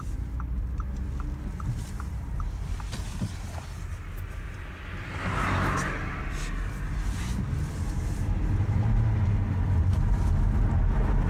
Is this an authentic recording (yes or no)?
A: yes